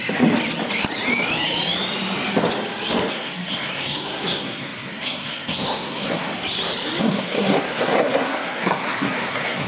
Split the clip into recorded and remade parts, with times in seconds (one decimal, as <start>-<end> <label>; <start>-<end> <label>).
0.0-3.1 recorded; 3.1-6.3 remade; 6.3-7.0 recorded; 7.0-9.7 remade